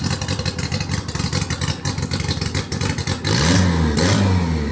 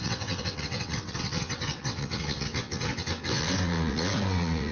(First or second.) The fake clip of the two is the second